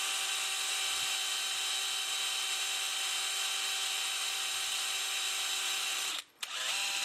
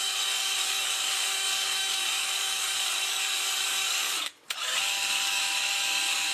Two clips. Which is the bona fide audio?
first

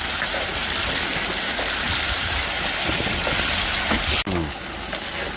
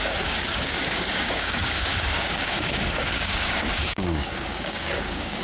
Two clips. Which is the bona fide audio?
first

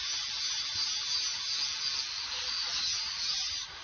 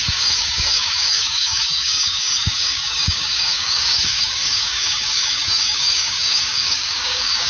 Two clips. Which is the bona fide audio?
first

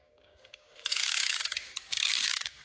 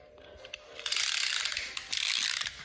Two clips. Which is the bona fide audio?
second